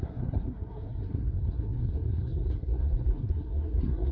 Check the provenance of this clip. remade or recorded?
remade